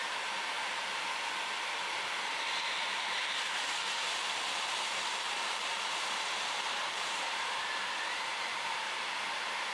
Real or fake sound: fake